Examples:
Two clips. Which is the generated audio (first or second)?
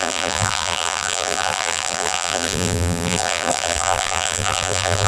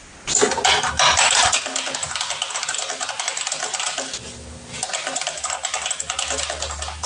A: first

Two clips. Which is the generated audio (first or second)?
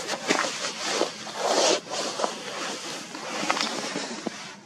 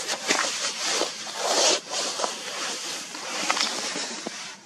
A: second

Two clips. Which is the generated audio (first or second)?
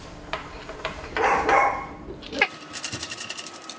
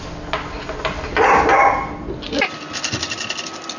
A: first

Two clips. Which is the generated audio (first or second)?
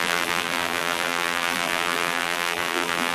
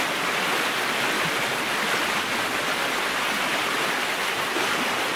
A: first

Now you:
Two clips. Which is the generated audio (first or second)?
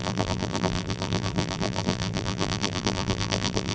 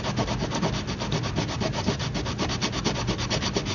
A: first